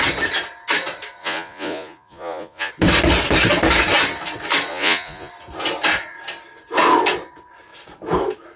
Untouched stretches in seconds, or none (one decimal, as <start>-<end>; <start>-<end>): 0.0-1.2; 2.7-4.7; 5.3-8.6